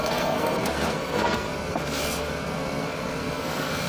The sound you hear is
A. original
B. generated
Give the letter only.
B